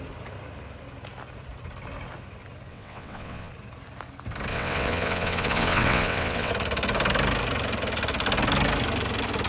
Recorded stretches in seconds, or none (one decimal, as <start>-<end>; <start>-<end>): 0.0-2.7; 3.5-4.5; 6.5-9.5